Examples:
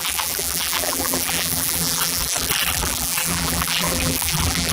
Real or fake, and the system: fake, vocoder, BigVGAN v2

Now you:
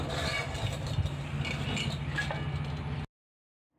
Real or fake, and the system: real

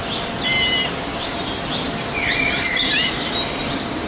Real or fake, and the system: real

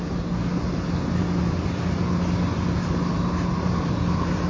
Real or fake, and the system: real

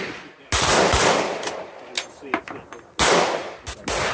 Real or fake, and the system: real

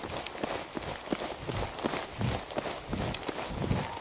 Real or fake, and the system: real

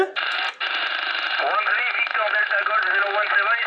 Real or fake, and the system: fake, vocoder, BigVGAN v2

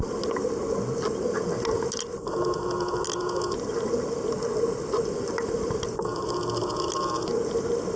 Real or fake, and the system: real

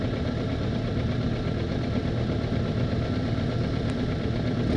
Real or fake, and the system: real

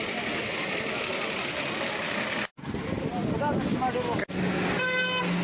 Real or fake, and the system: real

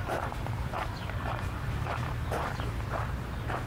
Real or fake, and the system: fake, vocoder, BigVGAN v2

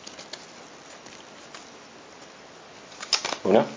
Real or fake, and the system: real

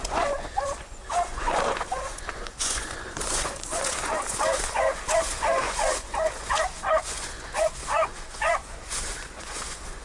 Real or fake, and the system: fake, vocoder, Vocos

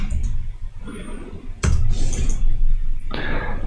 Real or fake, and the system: real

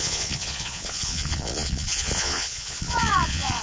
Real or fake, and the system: fake, vocoder, Vocos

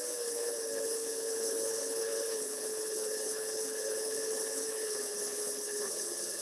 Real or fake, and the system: fake, codec, HILCodec